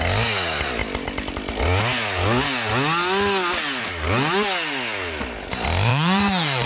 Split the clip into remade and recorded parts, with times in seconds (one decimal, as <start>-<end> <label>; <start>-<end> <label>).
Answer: 0.0-5.9 recorded; 5.9-6.7 remade